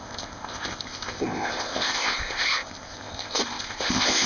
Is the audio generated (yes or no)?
yes